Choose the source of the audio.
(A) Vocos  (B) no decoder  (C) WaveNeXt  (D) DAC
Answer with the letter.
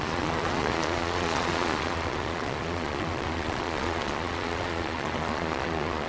A